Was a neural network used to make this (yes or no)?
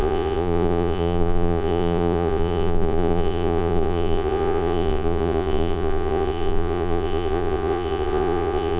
yes